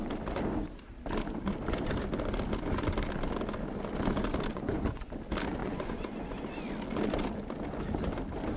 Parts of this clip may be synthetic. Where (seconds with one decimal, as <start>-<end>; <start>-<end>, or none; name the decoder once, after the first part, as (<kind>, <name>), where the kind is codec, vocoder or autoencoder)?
4.5-5.1 (vocoder, Vocos); 5.6-6.4